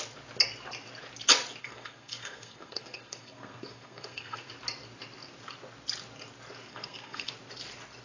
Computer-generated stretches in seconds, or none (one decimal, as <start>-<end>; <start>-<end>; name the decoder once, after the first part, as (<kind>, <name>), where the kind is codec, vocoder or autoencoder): 1.6-4.5 (codec, SNAC); 6.7-7.3

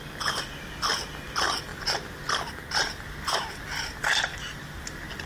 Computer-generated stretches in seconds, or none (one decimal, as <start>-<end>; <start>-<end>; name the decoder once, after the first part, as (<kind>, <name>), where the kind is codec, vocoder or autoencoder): none

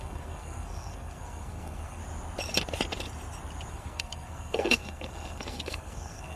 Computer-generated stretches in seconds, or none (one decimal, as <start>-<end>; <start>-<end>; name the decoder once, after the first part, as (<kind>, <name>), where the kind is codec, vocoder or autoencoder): 0.0-2.0 (codec, SNAC); 3.7-6.4

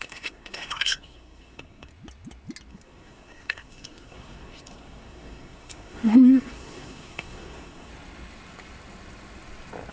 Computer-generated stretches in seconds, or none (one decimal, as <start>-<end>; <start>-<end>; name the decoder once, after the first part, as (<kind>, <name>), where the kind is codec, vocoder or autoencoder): 0.0-1.9 (codec, SNAC); 2.7-7.9

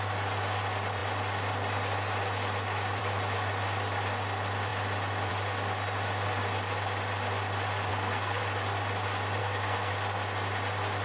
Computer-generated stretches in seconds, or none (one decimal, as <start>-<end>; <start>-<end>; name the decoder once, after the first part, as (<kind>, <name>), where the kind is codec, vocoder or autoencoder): 7.9-8.4 (codec, SNAC); 9.4-9.9